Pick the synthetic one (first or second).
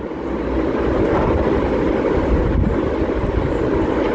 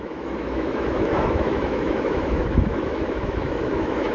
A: second